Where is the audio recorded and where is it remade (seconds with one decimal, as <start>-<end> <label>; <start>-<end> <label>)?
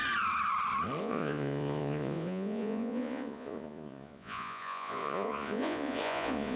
0.0-1.0 recorded; 1.0-6.6 remade